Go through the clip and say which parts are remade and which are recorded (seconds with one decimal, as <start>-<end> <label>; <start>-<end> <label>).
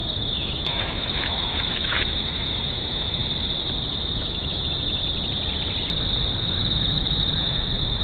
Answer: 0.0-3.2 remade; 3.2-3.9 recorded; 3.9-5.0 remade; 5.0-6.4 recorded; 6.4-8.0 remade